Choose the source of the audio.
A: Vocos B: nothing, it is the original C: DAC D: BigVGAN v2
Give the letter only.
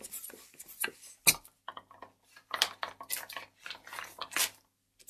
B